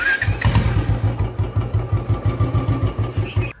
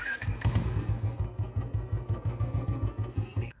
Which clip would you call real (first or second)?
first